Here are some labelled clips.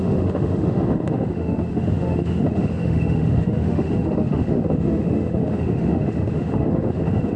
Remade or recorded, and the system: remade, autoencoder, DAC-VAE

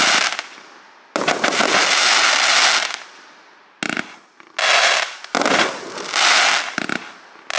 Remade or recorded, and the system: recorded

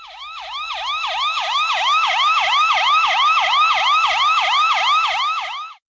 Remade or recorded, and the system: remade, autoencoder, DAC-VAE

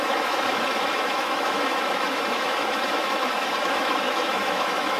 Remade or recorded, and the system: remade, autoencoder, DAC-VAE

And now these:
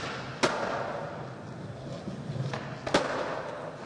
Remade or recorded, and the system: recorded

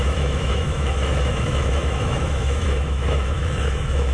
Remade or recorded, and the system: remade, autoencoder, DAC-VAE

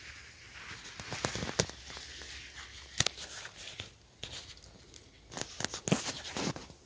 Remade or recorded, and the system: recorded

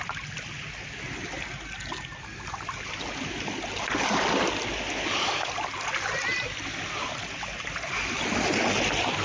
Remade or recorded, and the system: recorded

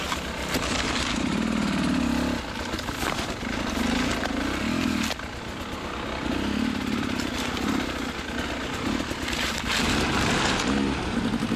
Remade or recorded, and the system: recorded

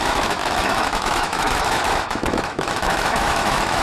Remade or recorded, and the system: remade, autoencoder, DAC-VAE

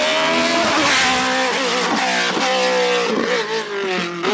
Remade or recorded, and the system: recorded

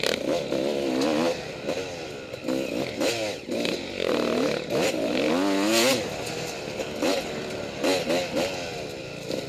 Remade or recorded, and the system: recorded